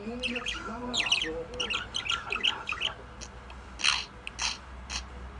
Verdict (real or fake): real